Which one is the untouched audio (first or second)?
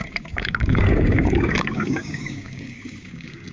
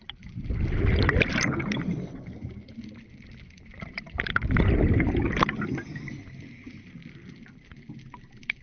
second